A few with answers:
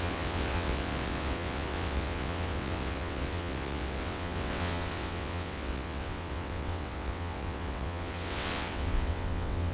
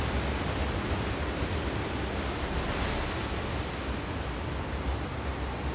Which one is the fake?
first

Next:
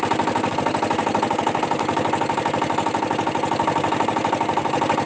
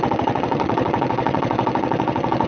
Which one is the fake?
second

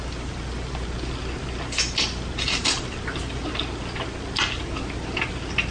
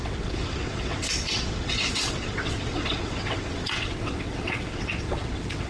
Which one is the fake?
second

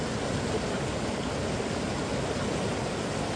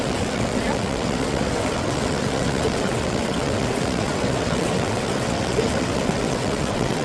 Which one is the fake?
second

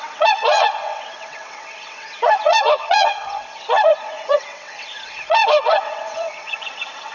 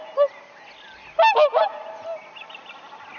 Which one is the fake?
first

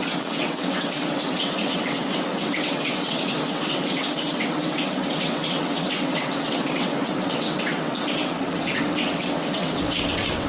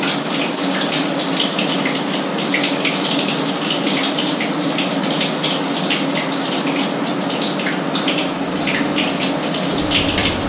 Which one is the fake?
first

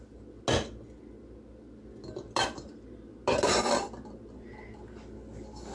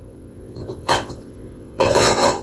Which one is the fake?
second